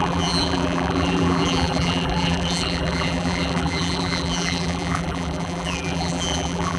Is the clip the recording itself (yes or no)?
no